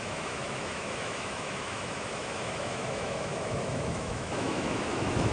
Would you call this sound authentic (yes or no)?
no